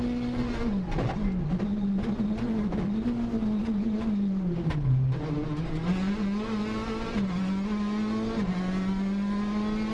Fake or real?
real